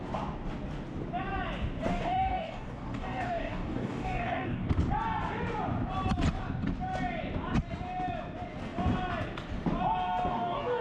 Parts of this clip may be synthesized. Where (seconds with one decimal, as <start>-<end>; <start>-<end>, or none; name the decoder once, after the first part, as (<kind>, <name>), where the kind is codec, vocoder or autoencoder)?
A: 1.9-4.7 (codec, DAC); 10.3-10.8